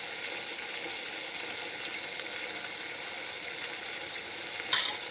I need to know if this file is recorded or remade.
recorded